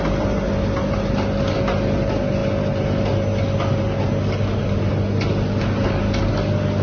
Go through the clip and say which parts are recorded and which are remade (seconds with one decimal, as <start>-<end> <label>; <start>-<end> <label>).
0.0-6.8 recorded